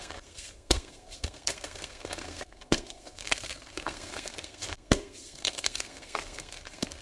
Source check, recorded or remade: remade